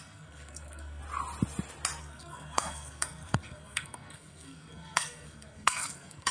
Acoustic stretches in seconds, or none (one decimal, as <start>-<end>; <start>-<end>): 1.0-2.0